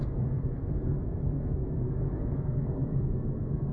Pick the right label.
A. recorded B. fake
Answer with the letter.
B